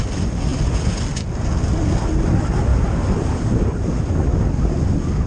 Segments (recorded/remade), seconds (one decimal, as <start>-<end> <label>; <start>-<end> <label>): 0.0-2.7 recorded; 2.7-3.7 remade; 3.7-5.3 recorded